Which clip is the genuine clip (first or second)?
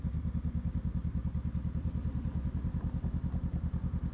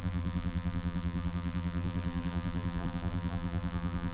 first